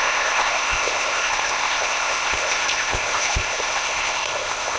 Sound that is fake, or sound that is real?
fake